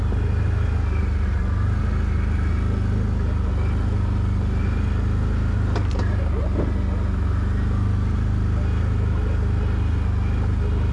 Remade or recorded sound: recorded